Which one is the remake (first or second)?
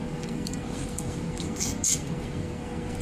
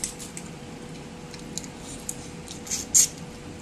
first